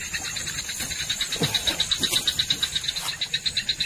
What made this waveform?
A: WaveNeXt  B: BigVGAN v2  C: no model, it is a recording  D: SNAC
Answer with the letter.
C